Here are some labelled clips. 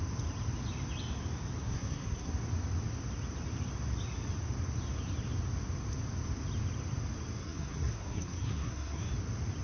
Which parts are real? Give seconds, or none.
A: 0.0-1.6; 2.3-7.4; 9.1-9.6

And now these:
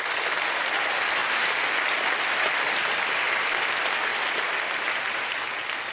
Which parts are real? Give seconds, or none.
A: 0.0-5.9

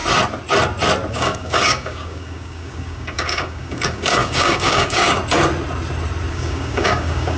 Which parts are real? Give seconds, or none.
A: 0.0-1.1; 5.2-6.3

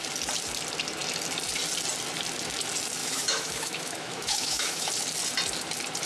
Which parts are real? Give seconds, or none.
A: 0.0-3.0; 4.9-6.1

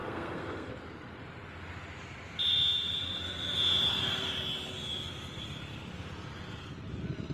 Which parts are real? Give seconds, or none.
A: 0.7-7.3

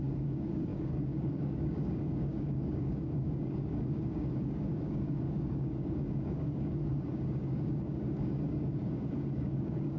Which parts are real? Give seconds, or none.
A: none

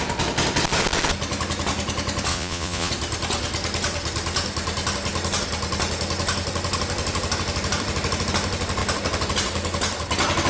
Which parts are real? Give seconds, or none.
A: 0.0-2.3; 2.9-10.5